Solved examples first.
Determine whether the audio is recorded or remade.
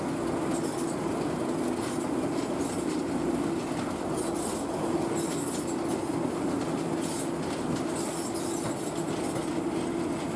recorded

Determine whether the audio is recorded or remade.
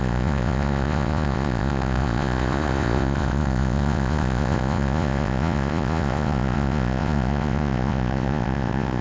remade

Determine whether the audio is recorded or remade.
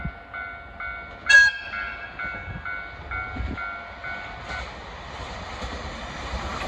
recorded